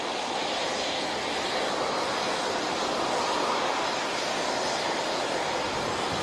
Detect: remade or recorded recorded